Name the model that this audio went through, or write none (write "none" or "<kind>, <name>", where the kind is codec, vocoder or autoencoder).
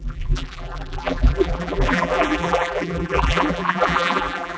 vocoder, BigVGAN v2